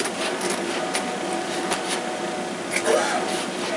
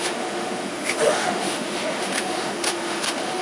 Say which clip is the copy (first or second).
second